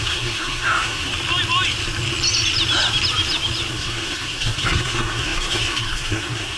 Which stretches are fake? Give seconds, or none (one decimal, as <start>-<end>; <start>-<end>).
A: 0.0-1.1; 3.7-6.6